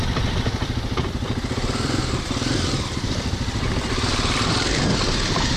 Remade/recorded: remade